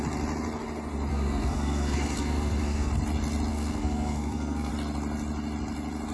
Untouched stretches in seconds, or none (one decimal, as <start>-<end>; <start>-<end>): 0.0-1.1; 2.9-3.5; 4.7-6.1